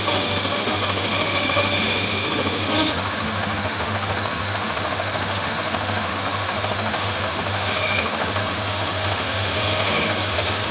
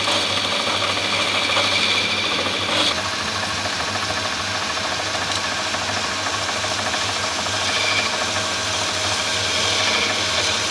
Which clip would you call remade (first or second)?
first